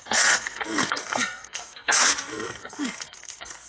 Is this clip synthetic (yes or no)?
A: yes